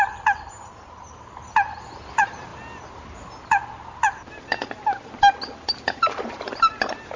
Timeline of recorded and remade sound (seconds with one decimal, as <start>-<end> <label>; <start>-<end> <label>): 0.0-7.2 recorded